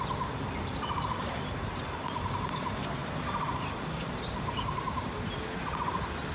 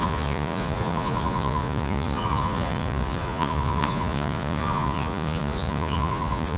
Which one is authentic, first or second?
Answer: first